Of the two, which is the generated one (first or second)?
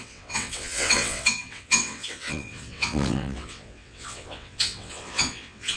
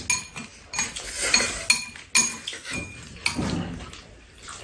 first